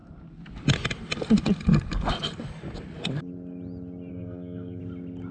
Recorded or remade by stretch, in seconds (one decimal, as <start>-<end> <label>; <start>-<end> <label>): 0.0-4.1 recorded; 4.1-4.8 remade; 4.8-5.3 recorded